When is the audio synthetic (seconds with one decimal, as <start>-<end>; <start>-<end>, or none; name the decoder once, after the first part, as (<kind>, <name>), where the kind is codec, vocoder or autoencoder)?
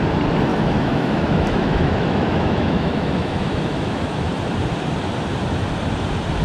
0.5-4.3 (autoencoder, DAC-VAE)